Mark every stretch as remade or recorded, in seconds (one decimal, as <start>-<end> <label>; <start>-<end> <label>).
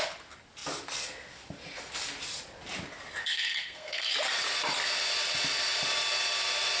0.0-3.2 recorded; 3.2-4.1 remade; 4.1-6.8 recorded